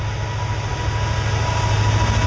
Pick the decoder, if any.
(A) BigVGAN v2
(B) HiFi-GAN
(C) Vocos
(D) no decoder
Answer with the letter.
D